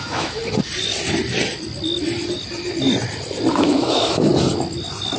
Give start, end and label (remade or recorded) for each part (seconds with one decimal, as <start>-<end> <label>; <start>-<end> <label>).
0.0-0.4 remade; 0.4-3.5 recorded; 3.5-4.3 remade; 4.3-5.2 recorded